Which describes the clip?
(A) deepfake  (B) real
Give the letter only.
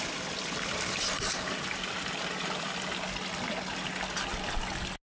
B